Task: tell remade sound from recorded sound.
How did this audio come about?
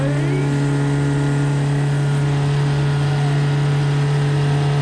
recorded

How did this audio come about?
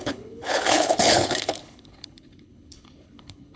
remade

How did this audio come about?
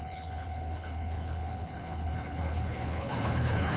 remade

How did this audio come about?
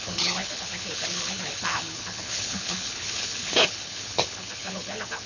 remade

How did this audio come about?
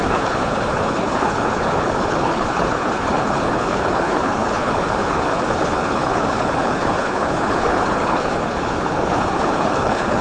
remade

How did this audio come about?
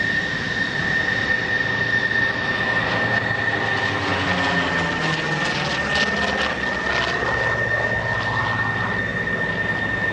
recorded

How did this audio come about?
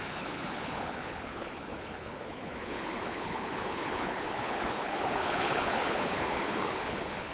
remade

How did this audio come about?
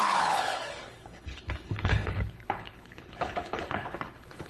remade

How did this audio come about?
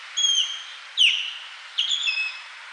recorded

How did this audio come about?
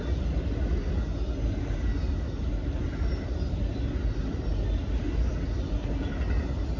recorded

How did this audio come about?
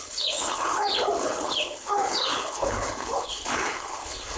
remade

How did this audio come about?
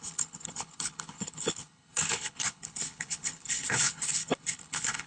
remade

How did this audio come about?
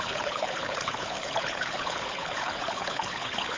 remade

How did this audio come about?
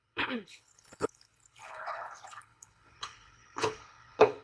remade